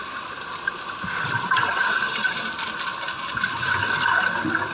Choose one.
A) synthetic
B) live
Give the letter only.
B